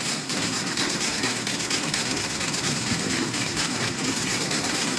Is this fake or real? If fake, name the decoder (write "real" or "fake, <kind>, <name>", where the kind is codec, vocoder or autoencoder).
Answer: fake, codec, SNAC